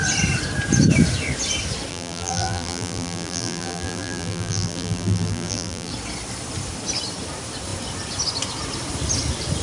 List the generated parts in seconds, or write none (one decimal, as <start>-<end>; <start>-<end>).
1.9-5.9